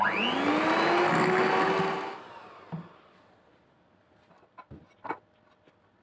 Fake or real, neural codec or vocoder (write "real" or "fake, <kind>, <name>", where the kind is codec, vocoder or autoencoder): real